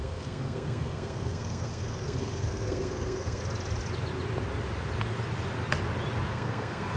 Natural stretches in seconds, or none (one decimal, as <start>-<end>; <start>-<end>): 3.4-6.3